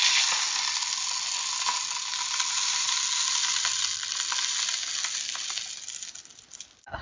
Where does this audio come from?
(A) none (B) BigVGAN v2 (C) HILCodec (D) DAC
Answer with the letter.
A